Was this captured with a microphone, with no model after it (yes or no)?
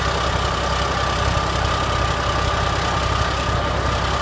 yes